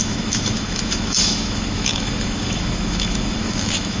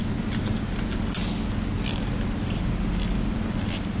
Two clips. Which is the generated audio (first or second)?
first